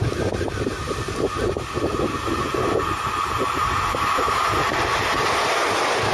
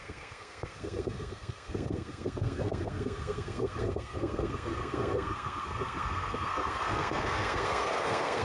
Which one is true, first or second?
first